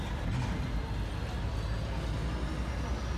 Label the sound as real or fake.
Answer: real